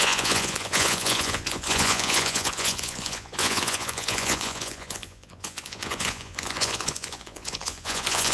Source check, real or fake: fake